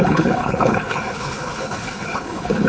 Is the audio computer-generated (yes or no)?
yes